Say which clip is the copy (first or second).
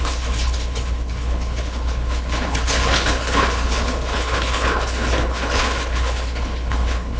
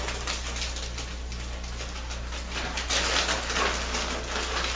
first